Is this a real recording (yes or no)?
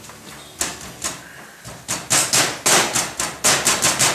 yes